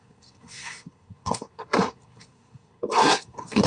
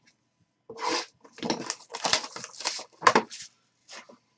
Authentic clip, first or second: second